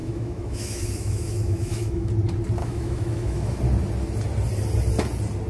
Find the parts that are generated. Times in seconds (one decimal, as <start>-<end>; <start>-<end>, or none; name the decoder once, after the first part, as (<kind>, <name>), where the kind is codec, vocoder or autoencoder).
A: 0.0-2.1 (autoencoder, DAC-VAE); 2.6-3.6